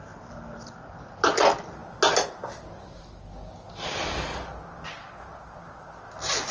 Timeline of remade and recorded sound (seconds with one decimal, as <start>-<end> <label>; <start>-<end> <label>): 0.0-6.5 recorded